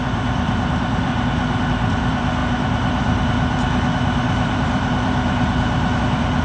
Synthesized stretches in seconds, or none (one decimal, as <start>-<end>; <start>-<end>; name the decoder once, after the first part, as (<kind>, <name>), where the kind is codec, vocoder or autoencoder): 0.0-1.1 (vocoder, BigVGAN v2); 1.7-6.4